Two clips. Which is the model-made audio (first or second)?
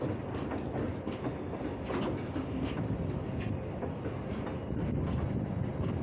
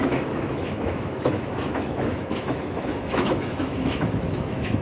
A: second